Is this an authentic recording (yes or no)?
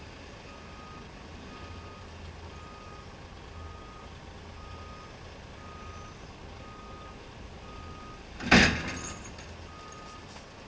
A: yes